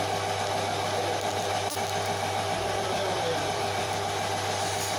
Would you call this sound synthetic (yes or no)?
yes